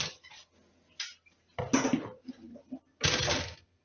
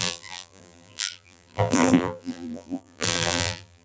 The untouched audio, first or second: first